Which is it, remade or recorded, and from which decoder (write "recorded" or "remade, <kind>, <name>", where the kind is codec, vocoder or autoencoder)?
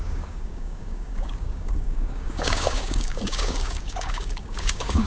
remade, codec, DAC